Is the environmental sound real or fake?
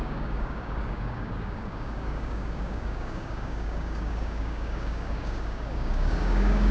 fake